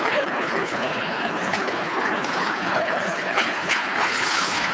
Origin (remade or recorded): remade